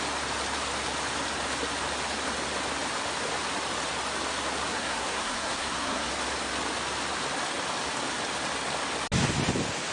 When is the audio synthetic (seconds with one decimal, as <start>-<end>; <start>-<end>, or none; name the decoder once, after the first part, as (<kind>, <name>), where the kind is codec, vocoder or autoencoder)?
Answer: 4.7-6.1 (codec, SNAC)